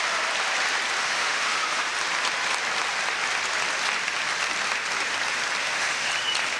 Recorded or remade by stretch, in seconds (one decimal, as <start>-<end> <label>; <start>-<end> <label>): 0.0-1.0 recorded; 1.0-1.8 remade; 1.8-5.6 recorded; 5.6-6.1 remade; 6.1-6.6 recorded